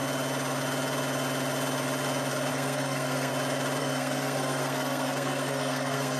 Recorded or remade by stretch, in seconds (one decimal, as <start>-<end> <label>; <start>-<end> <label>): 0.0-2.5 recorded; 2.5-3.3 remade; 3.3-3.8 recorded; 3.8-6.2 remade